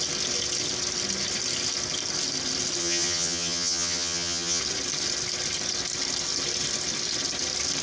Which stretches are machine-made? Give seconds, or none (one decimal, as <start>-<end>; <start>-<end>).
2.8-4.6